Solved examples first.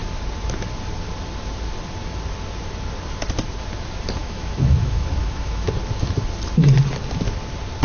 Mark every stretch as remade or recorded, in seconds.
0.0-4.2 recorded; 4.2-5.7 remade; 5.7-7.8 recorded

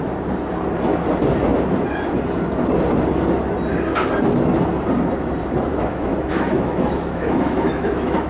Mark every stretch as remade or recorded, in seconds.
0.0-5.7 recorded; 5.7-8.3 remade

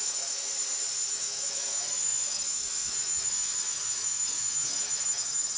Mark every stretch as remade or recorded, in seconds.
0.0-0.5 remade; 0.5-1.1 recorded; 1.1-5.6 remade